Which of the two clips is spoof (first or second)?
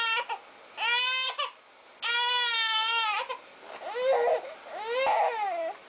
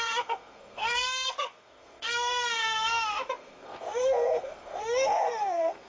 second